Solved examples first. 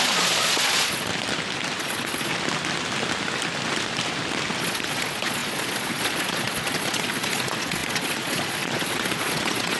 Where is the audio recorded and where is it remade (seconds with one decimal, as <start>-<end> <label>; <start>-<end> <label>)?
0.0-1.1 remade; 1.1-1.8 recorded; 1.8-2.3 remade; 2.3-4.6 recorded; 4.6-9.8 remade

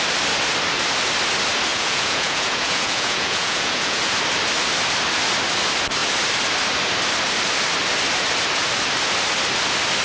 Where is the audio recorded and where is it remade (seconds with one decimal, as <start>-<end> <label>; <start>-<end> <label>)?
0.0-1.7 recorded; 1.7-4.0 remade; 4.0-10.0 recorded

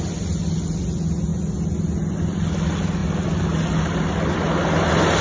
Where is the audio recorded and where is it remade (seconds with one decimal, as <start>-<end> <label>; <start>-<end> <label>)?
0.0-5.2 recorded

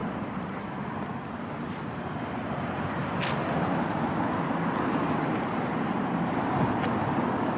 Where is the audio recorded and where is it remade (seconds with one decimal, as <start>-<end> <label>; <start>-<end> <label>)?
0.0-7.6 recorded